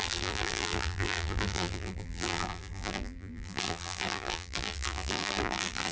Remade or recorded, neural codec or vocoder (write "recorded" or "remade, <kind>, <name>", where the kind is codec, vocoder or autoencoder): remade, vocoder, BigVGAN v2